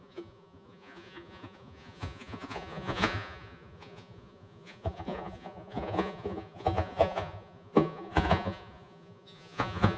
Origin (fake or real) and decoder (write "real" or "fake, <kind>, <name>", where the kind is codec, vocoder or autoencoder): fake, vocoder, Vocos